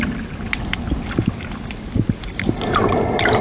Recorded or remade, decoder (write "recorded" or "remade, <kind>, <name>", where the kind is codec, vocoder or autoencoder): recorded